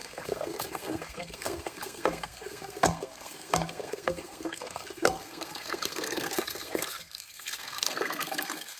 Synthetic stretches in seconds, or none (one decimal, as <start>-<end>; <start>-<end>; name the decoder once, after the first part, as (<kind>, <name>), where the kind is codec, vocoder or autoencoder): 0.0-8.8 (codec, SNAC)